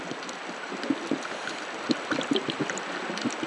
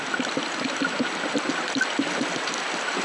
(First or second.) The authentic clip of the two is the first